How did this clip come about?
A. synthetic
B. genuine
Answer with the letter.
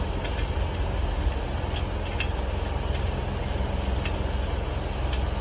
B